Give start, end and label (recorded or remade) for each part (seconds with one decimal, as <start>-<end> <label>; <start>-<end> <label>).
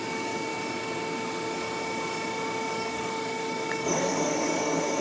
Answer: 0.0-0.5 remade; 0.5-2.7 recorded; 2.7-5.0 remade